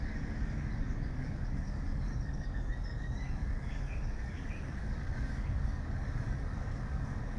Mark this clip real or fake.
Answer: fake